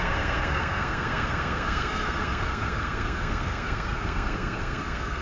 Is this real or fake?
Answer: fake